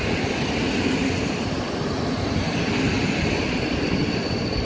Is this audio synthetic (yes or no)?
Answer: no